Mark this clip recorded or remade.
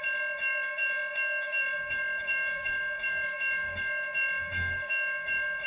remade